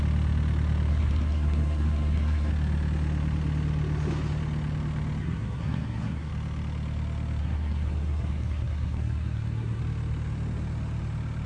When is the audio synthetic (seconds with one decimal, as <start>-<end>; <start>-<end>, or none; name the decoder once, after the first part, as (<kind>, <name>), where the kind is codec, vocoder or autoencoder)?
0.9-2.5 (codec, SNAC); 5.2-6.3; 7.4-9.8